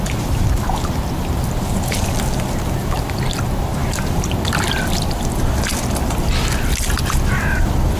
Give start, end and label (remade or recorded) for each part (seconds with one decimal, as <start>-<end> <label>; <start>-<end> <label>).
0.0-8.0 recorded